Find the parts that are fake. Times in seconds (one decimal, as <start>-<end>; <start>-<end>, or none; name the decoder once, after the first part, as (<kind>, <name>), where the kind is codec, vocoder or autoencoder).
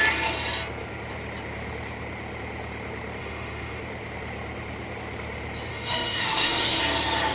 3.2-3.8 (autoencoder, DAC-VAE); 5.7-6.8